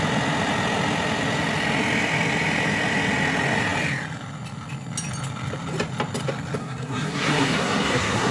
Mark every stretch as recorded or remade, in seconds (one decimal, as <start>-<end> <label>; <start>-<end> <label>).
0.0-6.6 recorded; 6.6-8.3 remade